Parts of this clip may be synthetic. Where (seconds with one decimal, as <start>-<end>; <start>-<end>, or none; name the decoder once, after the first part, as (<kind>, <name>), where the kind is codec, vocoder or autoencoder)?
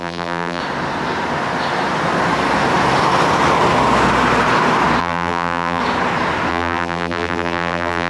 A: 0.0-0.6 (vocoder, BigVGAN v2); 5.0-5.8; 6.5-8.1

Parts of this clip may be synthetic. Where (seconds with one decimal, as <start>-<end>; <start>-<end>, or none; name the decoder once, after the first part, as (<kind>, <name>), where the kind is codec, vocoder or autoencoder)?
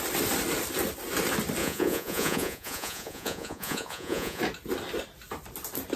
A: 1.6-4.4 (vocoder, Vocos)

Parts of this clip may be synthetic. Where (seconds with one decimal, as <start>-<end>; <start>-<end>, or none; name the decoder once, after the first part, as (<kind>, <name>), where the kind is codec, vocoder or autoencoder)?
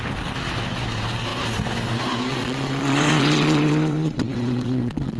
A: 2.3-5.2 (vocoder, WaveNeXt)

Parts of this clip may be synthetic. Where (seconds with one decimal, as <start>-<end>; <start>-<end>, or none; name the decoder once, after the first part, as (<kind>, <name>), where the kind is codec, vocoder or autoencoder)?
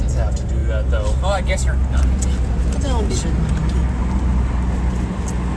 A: none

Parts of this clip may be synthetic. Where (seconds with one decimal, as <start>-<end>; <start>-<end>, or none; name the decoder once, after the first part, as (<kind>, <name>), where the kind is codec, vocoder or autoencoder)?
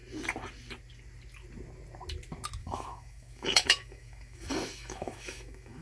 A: 2.6-5.8 (autoencoder, DAC-VAE)